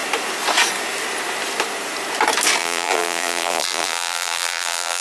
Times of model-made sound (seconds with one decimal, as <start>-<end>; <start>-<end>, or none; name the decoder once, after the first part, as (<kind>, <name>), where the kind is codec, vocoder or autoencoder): 2.6-5.0 (vocoder, BigVGAN v2)

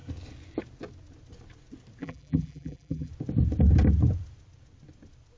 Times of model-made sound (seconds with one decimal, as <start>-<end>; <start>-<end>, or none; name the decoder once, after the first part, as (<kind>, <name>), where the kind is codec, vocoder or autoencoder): 2.0-3.1 (vocoder, BigVGAN v2)

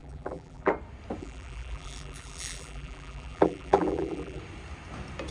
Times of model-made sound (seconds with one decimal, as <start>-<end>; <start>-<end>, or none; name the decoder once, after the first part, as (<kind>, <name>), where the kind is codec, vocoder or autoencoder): 0.0-0.7 (vocoder, BigVGAN v2); 1.2-4.4

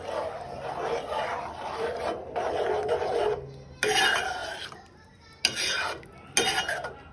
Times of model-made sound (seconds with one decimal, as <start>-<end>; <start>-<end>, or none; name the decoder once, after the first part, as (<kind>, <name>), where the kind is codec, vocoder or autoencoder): 1.3-2.5 (vocoder, BigVGAN v2)

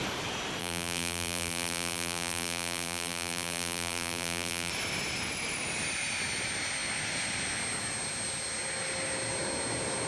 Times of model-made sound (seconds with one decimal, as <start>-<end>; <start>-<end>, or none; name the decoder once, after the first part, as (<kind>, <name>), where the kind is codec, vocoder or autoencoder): 0.6-4.7 (vocoder, BigVGAN v2)

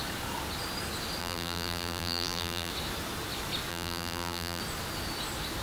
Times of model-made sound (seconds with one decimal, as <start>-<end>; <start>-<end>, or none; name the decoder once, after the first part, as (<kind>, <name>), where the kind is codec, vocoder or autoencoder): 1.2-2.7 (vocoder, BigVGAN v2); 3.7-4.6